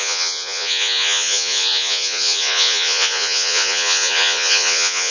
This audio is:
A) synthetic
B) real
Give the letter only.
A